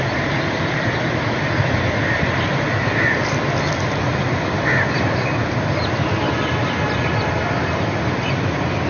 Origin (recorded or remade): recorded